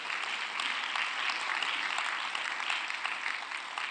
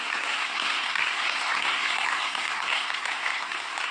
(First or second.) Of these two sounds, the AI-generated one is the second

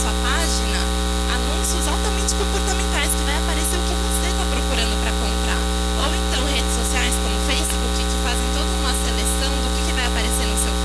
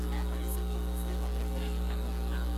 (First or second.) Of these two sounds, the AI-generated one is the second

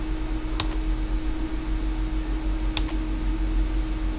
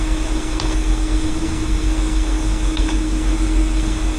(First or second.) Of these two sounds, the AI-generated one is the second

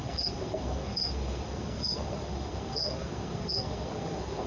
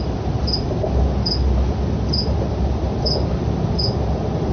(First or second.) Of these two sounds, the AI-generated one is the first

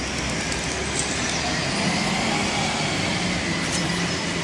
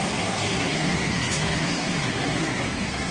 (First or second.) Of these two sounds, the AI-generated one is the second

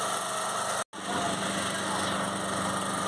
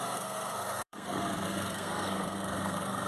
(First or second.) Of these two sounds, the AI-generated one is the second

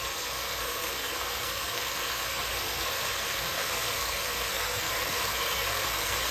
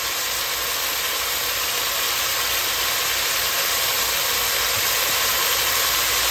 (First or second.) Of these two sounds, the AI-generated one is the first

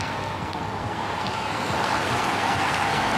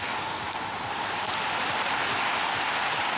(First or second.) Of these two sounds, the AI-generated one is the first